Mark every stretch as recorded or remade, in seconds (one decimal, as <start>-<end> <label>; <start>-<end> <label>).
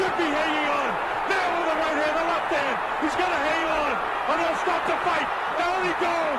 0.0-1.6 recorded; 1.6-2.9 remade; 2.9-3.6 recorded; 3.6-5.6 remade; 5.6-6.4 recorded